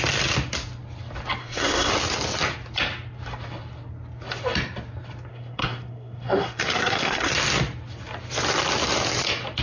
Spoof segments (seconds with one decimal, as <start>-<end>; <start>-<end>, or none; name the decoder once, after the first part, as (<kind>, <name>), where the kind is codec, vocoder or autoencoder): 1.4-1.9 (codec, SNAC); 5.3-7.3